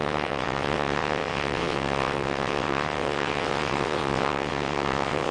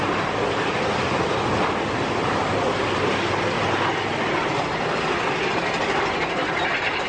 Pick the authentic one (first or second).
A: second